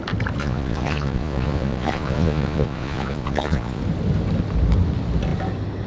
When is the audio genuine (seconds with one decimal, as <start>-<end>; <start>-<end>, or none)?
0.0-0.4; 3.8-5.9